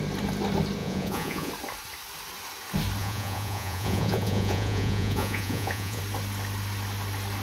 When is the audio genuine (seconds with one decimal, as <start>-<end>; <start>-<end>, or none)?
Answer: 0.0-0.8; 1.5-3.0; 6.0-7.4